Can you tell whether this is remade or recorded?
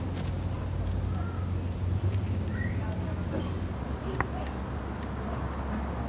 recorded